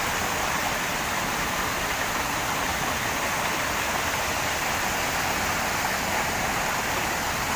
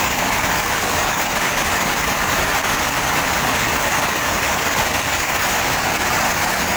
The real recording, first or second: first